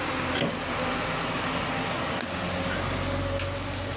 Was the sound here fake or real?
real